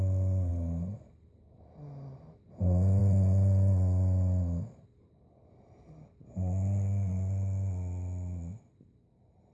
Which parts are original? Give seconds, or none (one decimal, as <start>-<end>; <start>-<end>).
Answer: 0.0-9.5